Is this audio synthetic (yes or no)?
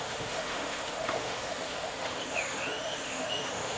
yes